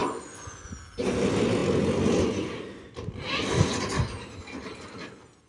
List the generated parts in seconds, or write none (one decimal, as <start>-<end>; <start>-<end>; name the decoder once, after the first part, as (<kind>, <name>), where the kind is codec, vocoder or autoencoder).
0.0-0.7 (vocoder, Vocos)